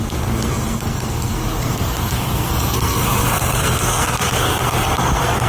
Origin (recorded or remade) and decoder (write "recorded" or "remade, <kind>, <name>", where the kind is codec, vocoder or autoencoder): remade, codec, SNAC